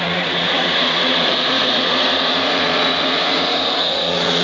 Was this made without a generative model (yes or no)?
no